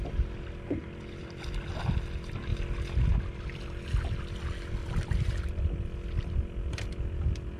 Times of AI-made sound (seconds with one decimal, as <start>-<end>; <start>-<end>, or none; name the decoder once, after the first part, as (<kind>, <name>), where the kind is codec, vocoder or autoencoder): 0.8-1.8 (vocoder, BigVGAN v2); 4.8-5.7